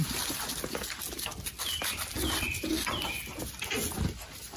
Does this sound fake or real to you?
real